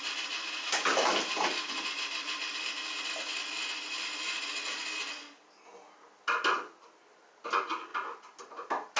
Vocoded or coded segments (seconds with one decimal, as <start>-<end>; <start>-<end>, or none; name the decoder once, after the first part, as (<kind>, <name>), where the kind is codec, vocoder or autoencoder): none